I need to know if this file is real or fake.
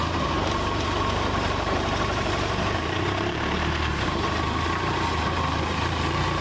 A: fake